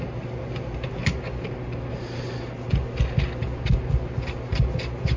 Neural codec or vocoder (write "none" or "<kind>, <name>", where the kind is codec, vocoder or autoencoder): none